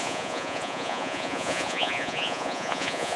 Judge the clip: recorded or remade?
remade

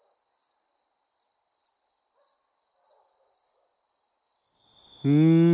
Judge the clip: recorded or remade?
recorded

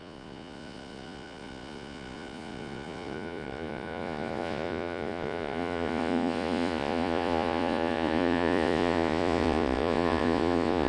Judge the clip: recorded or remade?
remade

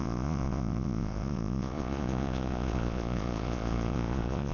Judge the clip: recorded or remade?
remade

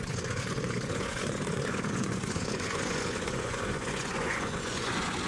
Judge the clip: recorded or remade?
remade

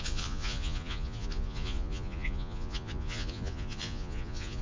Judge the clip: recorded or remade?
remade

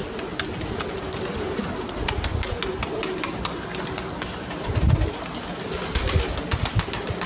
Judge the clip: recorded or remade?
recorded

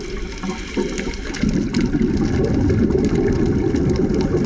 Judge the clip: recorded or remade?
recorded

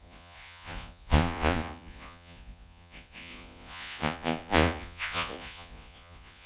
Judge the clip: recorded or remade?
remade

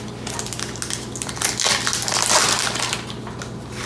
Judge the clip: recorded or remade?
recorded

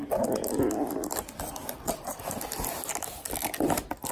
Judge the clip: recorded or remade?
recorded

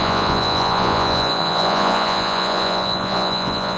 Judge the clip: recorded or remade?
remade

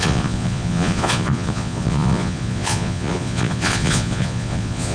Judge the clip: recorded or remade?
remade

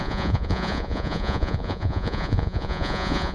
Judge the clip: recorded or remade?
remade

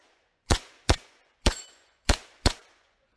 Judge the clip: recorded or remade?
remade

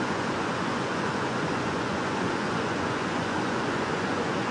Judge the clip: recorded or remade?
remade